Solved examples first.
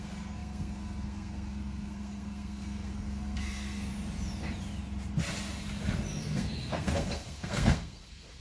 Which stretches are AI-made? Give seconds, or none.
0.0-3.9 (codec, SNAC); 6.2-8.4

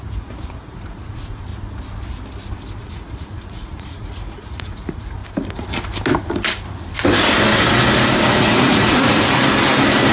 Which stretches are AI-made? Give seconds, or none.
0.0-1.5 (vocoder, Vocos); 2.8-5.2; 8.2-9.4

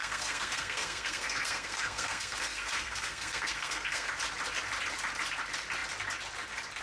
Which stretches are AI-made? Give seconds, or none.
0.0-4.1 (codec, SNAC)

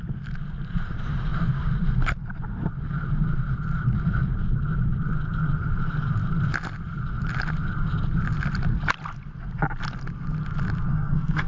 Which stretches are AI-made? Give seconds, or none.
10.9-11.5 (codec, SNAC)